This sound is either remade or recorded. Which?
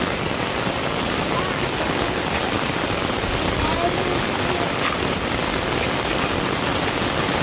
recorded